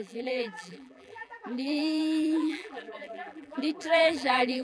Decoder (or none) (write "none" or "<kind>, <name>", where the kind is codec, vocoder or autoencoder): vocoder, BigVGAN v2